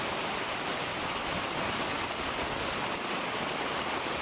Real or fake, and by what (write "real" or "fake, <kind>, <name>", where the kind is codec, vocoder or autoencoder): real